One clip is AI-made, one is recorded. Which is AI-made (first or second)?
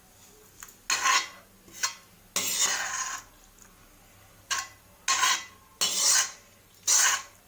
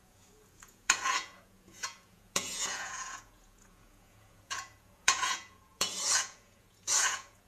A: second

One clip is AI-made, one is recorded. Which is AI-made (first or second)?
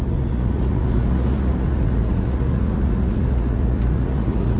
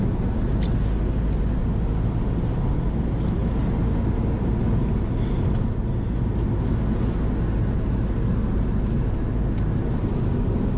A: first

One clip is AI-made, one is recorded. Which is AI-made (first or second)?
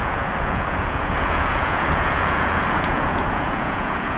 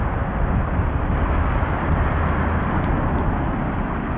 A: first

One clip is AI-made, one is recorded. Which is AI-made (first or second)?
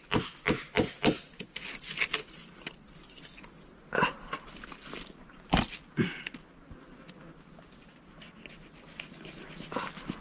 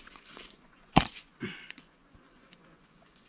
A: second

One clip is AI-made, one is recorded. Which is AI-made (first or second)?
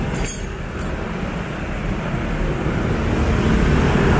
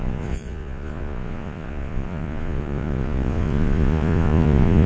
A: second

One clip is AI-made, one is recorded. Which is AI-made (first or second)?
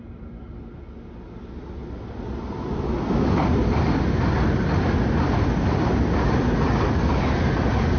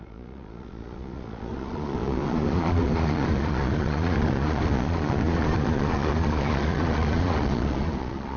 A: second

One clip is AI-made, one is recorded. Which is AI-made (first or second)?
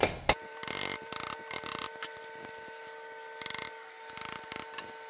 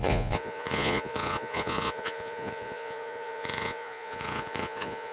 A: second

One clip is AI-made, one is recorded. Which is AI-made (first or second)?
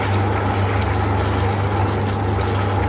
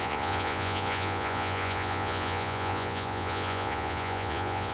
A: second